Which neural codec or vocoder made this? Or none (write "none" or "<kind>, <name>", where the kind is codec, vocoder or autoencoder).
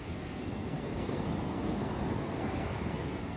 codec, SNAC